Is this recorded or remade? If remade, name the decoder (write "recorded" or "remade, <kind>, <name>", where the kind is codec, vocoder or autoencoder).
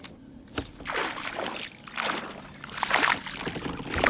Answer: recorded